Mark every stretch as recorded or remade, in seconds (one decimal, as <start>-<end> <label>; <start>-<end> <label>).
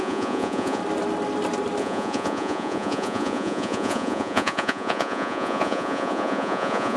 0.0-0.8 remade; 0.8-1.8 recorded; 1.8-7.0 remade